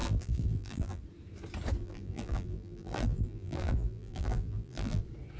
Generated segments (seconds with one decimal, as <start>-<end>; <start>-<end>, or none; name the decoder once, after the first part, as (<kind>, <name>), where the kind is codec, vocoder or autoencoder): 0.0-1.0 (vocoder, BigVGAN v2); 1.8-5.0